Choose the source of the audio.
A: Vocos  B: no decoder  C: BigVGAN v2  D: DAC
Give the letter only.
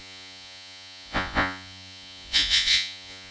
A